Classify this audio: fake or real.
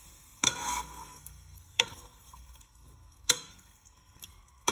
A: fake